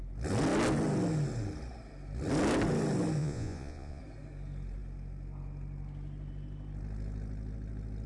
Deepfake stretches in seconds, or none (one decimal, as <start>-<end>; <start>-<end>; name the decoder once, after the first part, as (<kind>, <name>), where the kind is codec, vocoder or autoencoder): 3.2-4.0 (vocoder, Vocos)